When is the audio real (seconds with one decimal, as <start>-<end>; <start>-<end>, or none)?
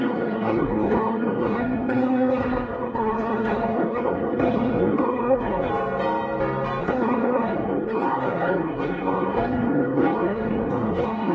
5.7-6.8